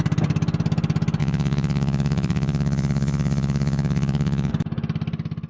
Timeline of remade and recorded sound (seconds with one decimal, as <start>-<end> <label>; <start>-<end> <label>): 0.0-1.2 recorded; 1.2-4.5 remade; 4.5-5.5 recorded

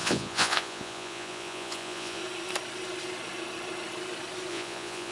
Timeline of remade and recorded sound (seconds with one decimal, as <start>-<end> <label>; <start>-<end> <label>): 0.0-2.2 remade; 2.2-4.5 recorded; 4.5-5.1 remade